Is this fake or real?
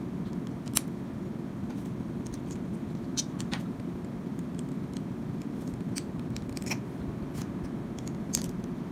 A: real